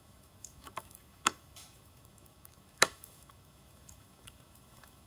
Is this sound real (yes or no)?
no